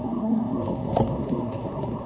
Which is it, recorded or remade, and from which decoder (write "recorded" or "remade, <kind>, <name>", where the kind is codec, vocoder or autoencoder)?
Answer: remade, codec, SNAC